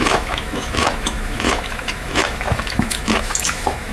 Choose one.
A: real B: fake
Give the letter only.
B